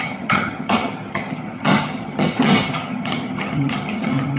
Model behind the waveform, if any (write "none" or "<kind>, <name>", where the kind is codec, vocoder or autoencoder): vocoder, HiFi-GAN